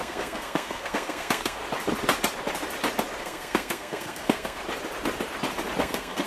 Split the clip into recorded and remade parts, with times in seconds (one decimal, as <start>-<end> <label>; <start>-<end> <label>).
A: 0.0-1.6 remade; 1.6-3.2 recorded; 3.2-4.6 remade; 4.6-5.8 recorded; 5.8-6.3 remade